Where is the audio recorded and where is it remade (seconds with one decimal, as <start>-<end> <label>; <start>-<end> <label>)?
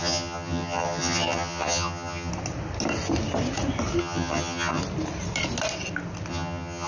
0.0-2.3 remade; 2.3-4.0 recorded; 4.0-4.8 remade; 4.8-6.3 recorded; 6.3-6.9 remade